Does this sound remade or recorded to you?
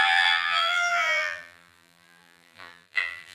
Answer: remade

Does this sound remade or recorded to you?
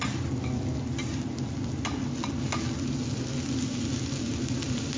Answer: recorded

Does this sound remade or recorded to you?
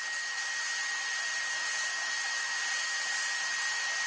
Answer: recorded